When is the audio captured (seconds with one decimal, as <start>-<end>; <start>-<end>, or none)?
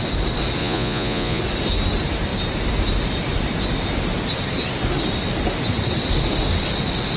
0.0-0.6; 1.4-7.2